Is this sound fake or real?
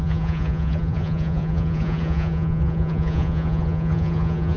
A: fake